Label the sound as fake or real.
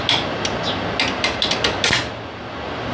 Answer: real